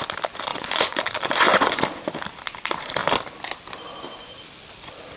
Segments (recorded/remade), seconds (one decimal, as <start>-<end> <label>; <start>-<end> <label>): 0.0-0.5 recorded; 0.5-1.8 remade; 1.8-5.2 recorded